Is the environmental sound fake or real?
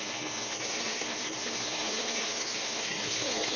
fake